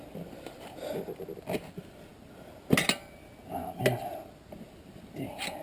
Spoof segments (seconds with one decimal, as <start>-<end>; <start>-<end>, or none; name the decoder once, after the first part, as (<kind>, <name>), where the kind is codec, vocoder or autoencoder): none